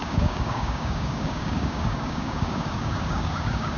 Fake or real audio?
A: fake